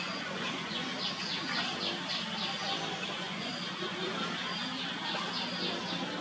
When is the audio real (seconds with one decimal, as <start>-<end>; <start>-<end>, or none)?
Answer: 0.9-3.1; 3.5-6.2